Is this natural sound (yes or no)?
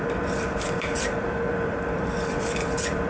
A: no